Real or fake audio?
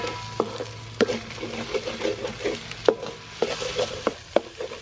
real